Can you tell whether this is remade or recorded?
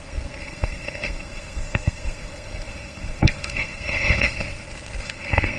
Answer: remade